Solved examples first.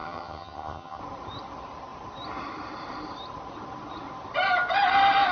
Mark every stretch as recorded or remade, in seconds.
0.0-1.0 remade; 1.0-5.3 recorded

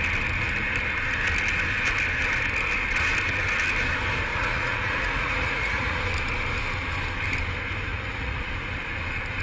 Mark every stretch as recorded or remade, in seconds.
0.0-4.3 recorded; 4.3-6.0 remade; 6.0-7.9 recorded; 7.9-8.5 remade; 8.5-9.4 recorded

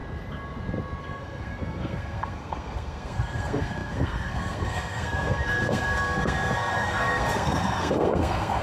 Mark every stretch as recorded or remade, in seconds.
0.0-1.0 recorded; 1.0-8.6 remade

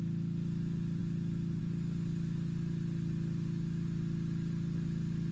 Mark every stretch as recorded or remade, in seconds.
0.0-5.3 recorded

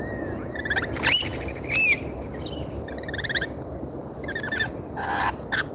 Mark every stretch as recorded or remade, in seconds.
0.0-5.7 recorded